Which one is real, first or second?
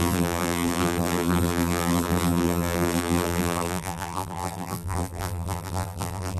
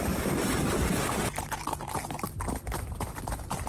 second